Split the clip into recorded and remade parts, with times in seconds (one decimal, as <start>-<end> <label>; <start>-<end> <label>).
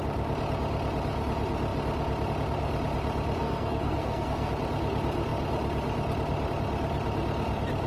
0.0-3.4 recorded; 3.4-4.5 remade; 4.5-7.9 recorded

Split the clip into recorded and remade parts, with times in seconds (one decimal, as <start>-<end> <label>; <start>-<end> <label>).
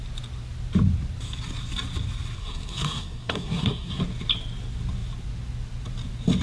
0.0-2.4 recorded; 2.4-4.0 remade; 4.0-6.4 recorded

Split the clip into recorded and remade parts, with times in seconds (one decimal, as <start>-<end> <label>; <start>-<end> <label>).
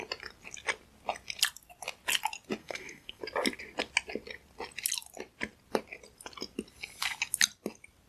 0.0-2.6 recorded; 2.6-3.2 remade; 3.2-8.1 recorded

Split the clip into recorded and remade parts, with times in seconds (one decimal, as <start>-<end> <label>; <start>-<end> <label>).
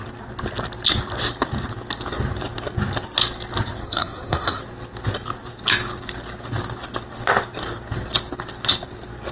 0.0-3.8 recorded; 3.8-4.6 remade; 4.6-9.3 recorded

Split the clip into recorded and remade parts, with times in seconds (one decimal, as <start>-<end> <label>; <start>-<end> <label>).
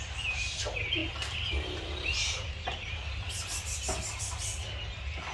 0.0-5.3 recorded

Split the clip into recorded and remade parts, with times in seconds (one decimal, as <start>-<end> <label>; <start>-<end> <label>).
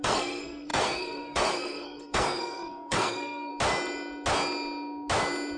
0.0-3.5 remade; 3.5-5.6 recorded